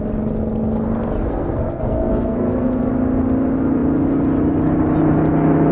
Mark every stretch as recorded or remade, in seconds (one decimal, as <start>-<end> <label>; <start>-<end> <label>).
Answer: 0.0-1.2 recorded; 1.2-2.9 remade; 2.9-5.7 recorded